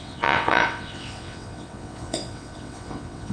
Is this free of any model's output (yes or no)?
no